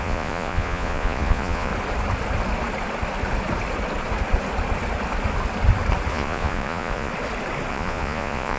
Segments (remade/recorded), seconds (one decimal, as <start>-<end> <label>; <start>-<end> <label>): 0.0-1.7 remade; 1.7-6.1 recorded; 6.1-7.1 remade; 7.1-7.7 recorded; 7.7-8.6 remade

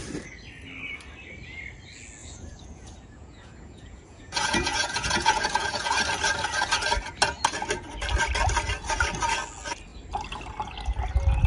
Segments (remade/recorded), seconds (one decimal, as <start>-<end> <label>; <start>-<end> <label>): 0.0-2.2 recorded; 2.2-6.0 remade; 6.0-11.5 recorded

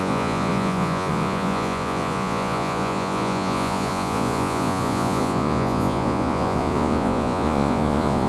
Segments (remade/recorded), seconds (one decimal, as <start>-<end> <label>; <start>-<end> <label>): 0.0-8.3 remade

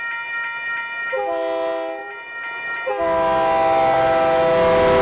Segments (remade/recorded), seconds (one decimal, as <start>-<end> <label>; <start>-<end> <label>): 0.0-5.0 recorded

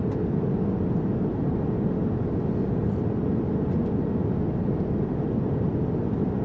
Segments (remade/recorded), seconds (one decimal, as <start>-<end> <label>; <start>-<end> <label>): 0.0-6.4 recorded

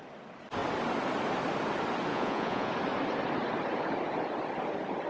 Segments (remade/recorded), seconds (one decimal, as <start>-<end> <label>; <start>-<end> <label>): 0.0-2.1 recorded; 2.1-2.7 remade; 2.7-5.1 recorded

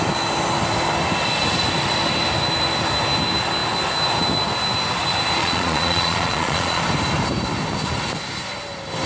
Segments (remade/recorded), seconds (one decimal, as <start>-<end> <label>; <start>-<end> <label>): 0.0-5.4 recorded; 5.4-6.8 remade; 6.8-9.1 recorded